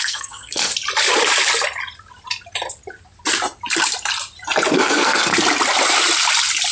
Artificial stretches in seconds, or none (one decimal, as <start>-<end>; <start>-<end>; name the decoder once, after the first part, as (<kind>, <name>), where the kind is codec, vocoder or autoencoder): 0.0-0.7 (codec, SNAC); 4.7-5.3